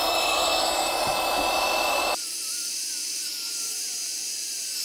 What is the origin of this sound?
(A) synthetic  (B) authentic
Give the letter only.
A